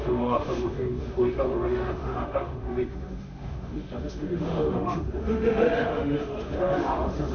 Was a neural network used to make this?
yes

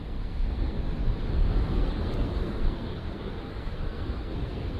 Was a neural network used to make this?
yes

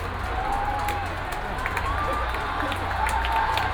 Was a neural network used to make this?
no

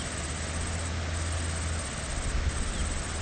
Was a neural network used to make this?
no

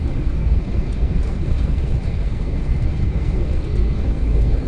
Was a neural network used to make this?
yes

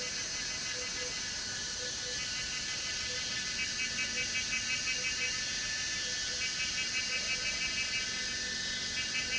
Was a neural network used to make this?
no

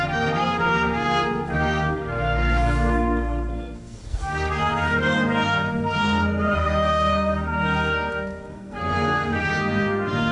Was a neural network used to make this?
yes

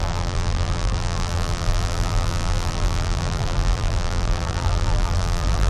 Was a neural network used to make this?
yes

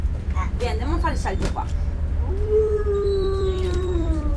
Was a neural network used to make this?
yes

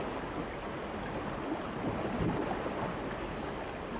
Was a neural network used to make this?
no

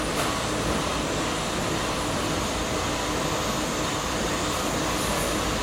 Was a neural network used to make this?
yes